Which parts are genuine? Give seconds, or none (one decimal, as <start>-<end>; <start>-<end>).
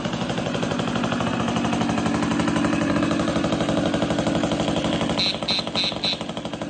0.0-6.7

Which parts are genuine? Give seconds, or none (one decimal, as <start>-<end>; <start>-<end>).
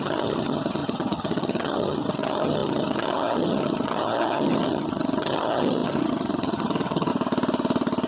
7.1-8.1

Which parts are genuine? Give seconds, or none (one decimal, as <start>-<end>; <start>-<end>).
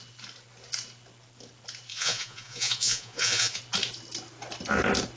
0.0-1.9; 3.6-5.2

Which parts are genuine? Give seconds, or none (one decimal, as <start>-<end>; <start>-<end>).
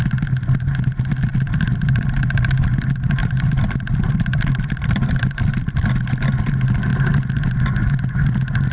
0.0-1.3; 2.0-3.2; 5.9-8.7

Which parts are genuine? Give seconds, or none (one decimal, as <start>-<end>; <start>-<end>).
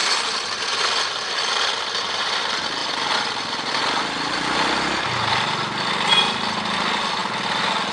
0.6-2.8; 3.8-7.9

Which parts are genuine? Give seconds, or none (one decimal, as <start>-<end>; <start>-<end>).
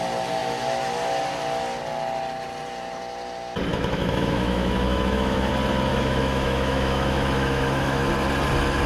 0.0-3.7; 5.5-5.9; 8.1-8.9